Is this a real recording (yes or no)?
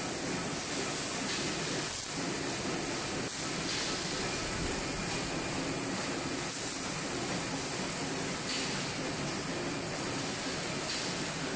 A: yes